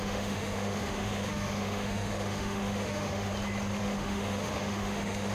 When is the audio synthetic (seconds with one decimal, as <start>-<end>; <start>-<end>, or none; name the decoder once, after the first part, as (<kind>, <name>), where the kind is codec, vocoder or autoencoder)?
0.0-3.3 (autoencoder, DAC-VAE); 3.8-5.3